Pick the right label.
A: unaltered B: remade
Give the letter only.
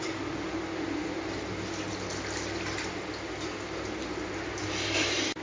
A